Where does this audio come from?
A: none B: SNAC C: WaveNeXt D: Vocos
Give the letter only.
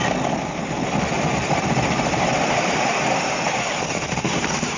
A